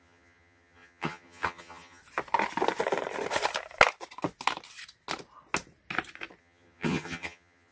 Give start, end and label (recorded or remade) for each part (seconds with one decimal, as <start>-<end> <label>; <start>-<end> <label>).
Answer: 0.0-2.0 remade; 2.0-6.4 recorded; 6.4-7.7 remade